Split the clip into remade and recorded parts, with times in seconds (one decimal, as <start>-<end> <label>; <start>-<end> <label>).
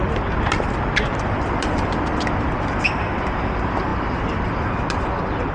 0.0-5.5 recorded